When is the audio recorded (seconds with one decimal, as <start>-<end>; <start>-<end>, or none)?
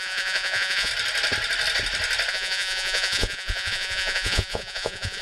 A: 0.9-2.3